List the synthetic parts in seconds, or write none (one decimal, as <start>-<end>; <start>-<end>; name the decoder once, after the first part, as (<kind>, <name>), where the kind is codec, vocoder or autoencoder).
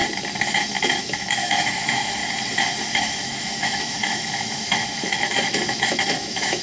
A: 0.8-2.2 (autoencoder, DAC-VAE); 2.9-6.6